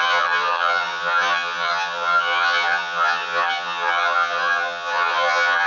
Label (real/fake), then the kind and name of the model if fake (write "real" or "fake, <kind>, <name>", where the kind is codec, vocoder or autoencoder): fake, vocoder, HiFi-GAN